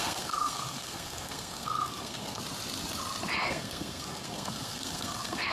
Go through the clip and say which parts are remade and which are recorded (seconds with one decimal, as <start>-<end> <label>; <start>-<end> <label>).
0.0-2.4 remade; 2.4-3.5 recorded; 3.5-5.5 remade